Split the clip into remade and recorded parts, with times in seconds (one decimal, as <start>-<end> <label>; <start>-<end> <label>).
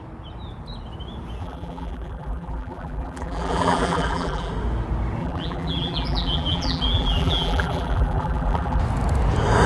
0.0-1.4 recorded; 1.4-4.5 remade; 4.5-5.2 recorded; 5.2-8.8 remade; 8.8-9.7 recorded